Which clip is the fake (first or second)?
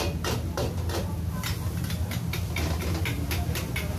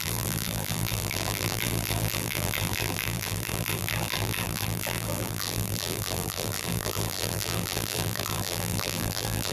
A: second